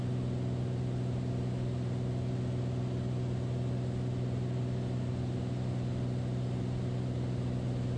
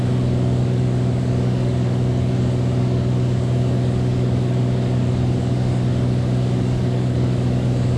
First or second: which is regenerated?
second